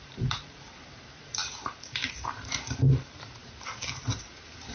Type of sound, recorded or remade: remade